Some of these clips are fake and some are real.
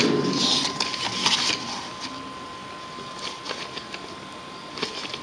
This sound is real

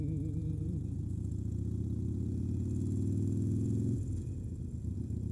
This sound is fake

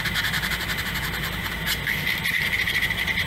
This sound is real